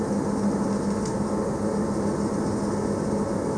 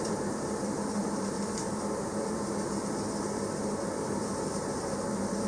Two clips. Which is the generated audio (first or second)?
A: second